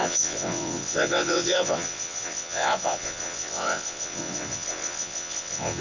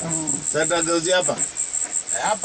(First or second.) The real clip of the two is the second